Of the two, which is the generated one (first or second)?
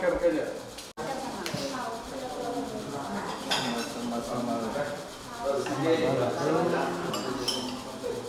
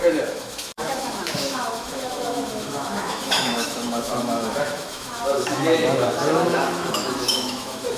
second